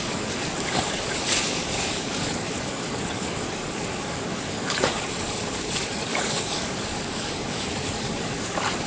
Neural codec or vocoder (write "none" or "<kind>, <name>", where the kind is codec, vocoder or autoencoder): codec, DAC